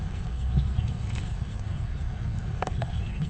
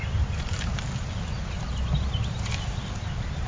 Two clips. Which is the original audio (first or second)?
second